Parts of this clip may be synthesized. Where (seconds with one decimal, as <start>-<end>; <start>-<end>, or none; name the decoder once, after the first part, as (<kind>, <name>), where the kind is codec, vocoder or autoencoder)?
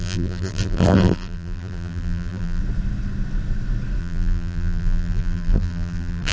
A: 0.0-2.6 (vocoder, BigVGAN v2); 4.0-6.3